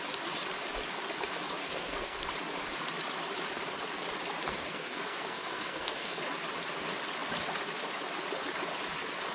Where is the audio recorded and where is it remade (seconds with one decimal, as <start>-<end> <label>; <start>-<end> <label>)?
0.0-1.6 recorded; 1.6-2.2 remade; 2.2-4.5 recorded; 4.5-6.2 remade; 6.2-9.3 recorded